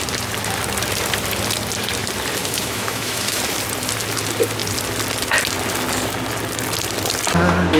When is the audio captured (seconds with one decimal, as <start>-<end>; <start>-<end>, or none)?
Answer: 0.0-2.4; 3.4-7.8